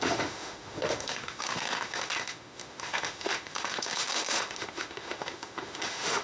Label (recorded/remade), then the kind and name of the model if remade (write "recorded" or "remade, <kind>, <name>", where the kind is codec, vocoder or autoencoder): remade, autoencoder, DAC-VAE